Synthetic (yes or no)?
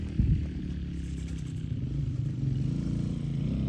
no